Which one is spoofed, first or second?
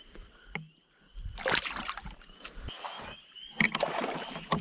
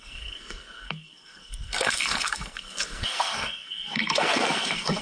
second